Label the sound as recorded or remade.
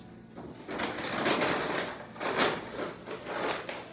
recorded